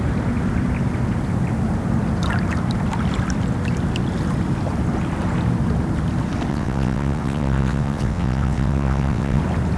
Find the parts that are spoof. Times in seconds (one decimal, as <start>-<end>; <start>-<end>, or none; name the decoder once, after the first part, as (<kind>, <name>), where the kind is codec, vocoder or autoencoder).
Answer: 6.5-9.4 (vocoder, WaveNeXt)